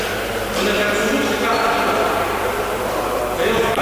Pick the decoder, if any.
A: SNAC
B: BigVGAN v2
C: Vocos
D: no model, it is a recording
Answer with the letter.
D